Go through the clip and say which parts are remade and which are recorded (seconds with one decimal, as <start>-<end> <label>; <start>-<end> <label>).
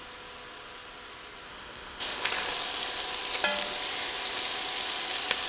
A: 0.0-1.5 recorded; 1.5-2.3 remade; 2.3-5.5 recorded